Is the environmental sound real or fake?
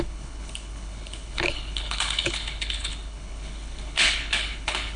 fake